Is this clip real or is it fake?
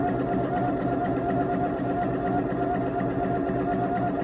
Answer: real